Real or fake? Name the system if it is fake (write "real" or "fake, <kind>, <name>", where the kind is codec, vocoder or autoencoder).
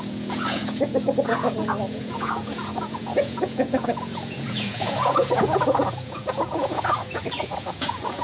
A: fake, vocoder, Vocos